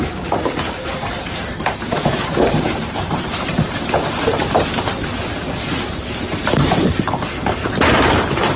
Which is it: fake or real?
fake